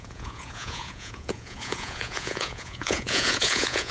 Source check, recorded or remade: remade